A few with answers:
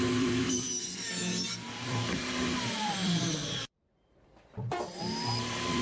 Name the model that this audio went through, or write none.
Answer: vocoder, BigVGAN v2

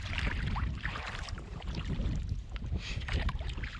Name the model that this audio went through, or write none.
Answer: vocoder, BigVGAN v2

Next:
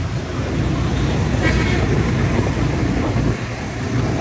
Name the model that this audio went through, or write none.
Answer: vocoder, BigVGAN v2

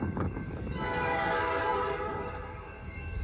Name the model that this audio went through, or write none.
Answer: codec, DAC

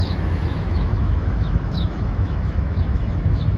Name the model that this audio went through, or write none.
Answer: autoencoder, DAC-VAE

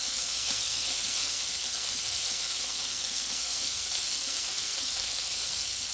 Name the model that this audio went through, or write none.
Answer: codec, SNAC